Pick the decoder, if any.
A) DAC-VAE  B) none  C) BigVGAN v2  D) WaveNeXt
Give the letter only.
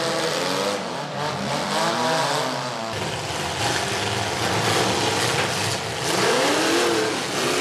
B